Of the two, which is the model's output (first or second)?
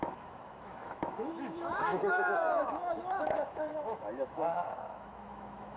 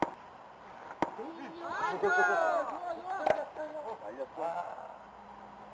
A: first